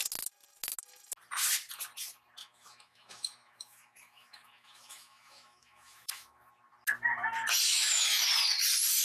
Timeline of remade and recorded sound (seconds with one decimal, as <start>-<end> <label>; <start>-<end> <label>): 0.0-2.4 recorded; 2.4-6.5 remade; 6.5-7.7 recorded; 7.7-8.2 remade; 8.2-9.0 recorded